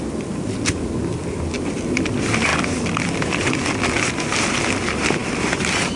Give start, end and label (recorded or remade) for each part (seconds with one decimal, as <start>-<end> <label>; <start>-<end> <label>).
0.0-6.0 recorded

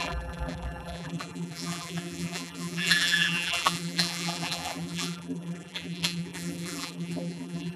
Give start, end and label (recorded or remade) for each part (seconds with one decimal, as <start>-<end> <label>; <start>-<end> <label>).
0.0-7.8 remade

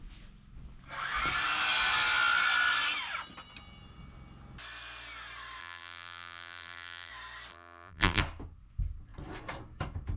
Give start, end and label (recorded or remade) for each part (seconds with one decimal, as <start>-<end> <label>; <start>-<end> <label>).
0.0-5.6 recorded; 5.6-7.1 remade; 7.1-7.5 recorded; 7.5-8.2 remade; 8.2-10.2 recorded

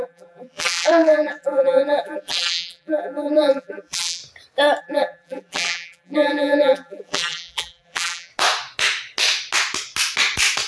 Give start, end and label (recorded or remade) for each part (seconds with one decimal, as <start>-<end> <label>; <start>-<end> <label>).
0.0-4.2 remade; 4.2-4.8 recorded; 4.8-8.3 remade; 8.3-10.7 recorded

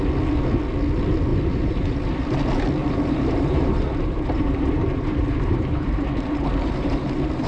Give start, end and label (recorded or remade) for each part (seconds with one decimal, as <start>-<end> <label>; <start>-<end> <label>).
0.0-1.3 recorded; 1.3-2.4 remade; 2.4-2.8 recorded; 2.8-7.5 remade

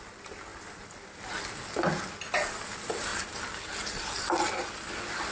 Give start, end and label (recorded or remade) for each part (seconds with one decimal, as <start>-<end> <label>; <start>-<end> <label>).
0.0-0.5 recorded; 0.5-1.4 remade; 1.4-5.3 recorded

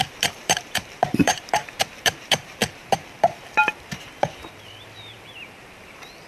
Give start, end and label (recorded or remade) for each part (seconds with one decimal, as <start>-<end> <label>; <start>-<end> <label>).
0.0-6.3 remade